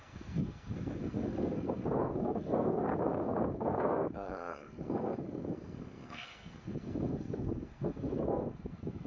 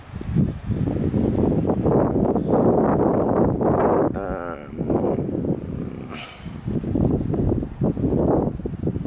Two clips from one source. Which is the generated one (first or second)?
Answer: first